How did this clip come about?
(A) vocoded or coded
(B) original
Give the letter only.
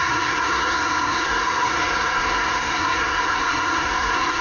A